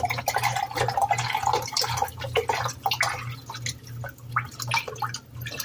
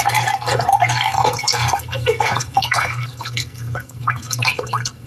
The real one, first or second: first